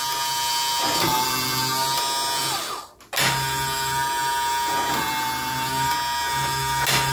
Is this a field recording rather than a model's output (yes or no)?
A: yes